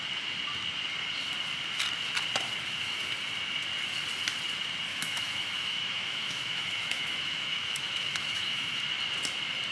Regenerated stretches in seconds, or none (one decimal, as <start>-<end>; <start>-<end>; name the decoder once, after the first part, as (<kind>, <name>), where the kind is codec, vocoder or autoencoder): 4.9-8.8 (autoencoder, DAC-VAE)